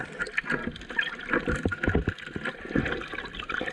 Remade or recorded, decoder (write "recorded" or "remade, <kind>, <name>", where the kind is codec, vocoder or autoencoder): recorded